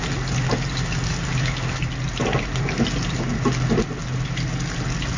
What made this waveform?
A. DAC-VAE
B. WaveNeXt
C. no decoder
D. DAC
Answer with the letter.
C